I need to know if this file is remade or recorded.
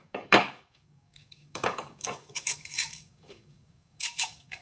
remade